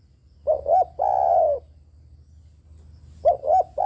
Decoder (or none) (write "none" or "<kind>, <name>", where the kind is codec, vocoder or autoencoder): none